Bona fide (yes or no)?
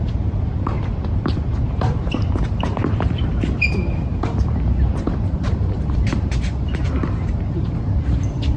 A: no